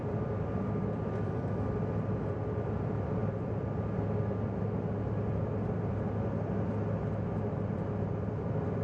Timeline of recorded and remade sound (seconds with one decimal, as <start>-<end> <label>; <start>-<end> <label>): 0.0-3.2 remade; 3.2-7.7 recorded; 7.7-8.8 remade